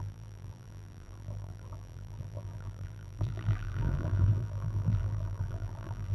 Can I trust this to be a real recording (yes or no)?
no